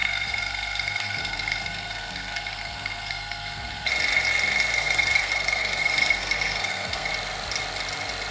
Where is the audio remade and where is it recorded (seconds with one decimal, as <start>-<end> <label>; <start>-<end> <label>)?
0.0-3.9 remade; 3.9-4.7 recorded; 4.7-7.1 remade; 7.1-8.3 recorded